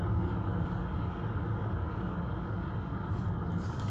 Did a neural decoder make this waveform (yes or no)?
yes